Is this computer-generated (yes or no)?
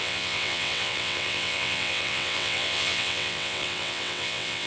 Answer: yes